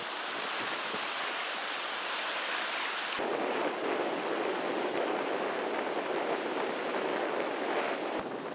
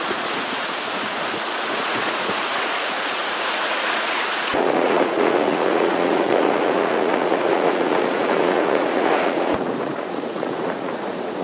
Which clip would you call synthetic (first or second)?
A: second